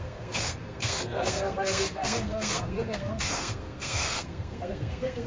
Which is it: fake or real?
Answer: fake